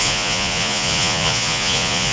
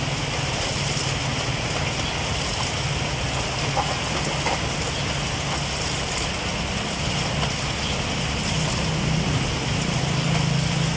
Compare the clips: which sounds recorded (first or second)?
second